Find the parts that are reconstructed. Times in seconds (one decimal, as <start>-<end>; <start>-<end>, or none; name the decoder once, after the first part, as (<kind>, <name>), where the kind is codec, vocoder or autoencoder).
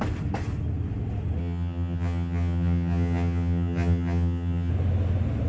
1.4-4.7 (vocoder, HiFi-GAN)